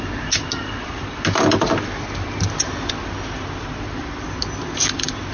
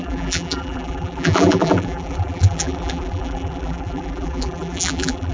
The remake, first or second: second